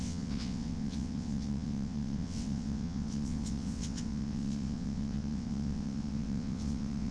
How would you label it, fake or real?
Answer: fake